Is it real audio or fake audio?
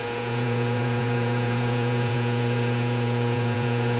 fake